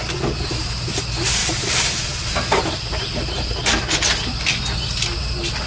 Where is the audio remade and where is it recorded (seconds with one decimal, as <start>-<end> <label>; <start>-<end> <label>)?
0.0-1.4 recorded; 1.4-3.4 remade; 3.4-5.7 recorded